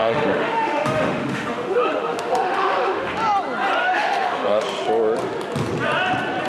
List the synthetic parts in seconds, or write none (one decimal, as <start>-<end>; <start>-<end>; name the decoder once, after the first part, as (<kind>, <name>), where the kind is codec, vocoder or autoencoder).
0.0-3.1 (autoencoder, DAC-VAE); 3.8-4.6